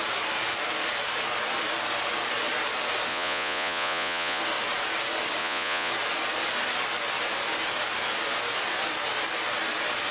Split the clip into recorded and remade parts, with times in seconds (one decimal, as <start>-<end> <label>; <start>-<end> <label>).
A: 0.0-3.1 recorded; 3.1-4.4 remade; 4.4-5.4 recorded; 5.4-5.9 remade; 5.9-10.1 recorded